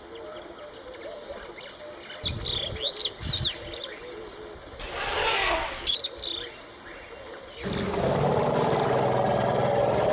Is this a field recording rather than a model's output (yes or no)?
yes